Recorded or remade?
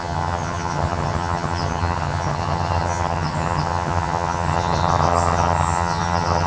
remade